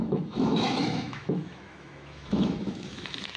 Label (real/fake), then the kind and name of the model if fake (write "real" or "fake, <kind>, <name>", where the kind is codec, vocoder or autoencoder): fake, autoencoder, DAC-VAE